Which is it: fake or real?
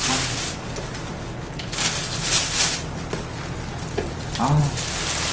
real